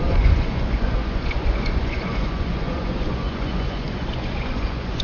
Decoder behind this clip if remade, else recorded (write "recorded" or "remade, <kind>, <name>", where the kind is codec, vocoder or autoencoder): remade, vocoder, Vocos